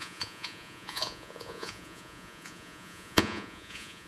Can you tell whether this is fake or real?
fake